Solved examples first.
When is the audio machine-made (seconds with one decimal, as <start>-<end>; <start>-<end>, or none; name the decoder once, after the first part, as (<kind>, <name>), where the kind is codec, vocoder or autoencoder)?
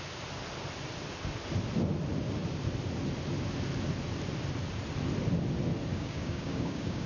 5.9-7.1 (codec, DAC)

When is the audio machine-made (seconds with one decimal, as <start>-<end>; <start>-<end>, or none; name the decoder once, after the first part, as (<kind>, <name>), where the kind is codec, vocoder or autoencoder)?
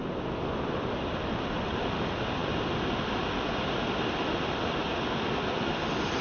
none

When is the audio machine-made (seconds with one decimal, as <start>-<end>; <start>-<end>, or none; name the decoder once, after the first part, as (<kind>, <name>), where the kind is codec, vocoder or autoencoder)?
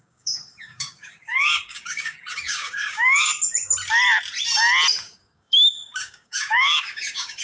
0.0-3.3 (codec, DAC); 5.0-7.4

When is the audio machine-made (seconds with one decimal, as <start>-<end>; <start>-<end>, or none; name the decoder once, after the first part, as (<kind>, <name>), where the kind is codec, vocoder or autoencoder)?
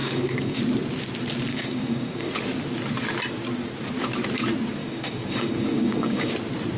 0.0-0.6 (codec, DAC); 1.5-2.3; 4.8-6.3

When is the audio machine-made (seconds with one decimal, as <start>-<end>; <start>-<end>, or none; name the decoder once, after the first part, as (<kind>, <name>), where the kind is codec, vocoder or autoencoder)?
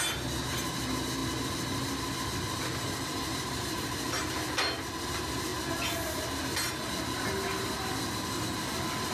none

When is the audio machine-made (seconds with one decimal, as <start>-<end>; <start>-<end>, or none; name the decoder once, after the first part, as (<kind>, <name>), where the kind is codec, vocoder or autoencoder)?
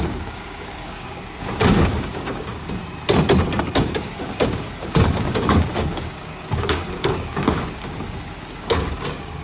0.0-2.8 (codec, DAC); 3.8-9.4